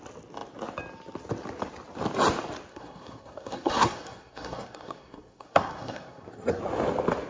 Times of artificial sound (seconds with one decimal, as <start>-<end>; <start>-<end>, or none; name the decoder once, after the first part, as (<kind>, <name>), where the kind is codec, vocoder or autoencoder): 2.7-6.6 (codec, SNAC)